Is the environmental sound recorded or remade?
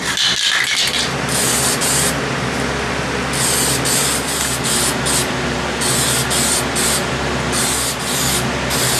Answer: recorded